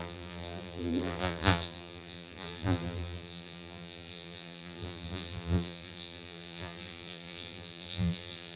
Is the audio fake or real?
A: fake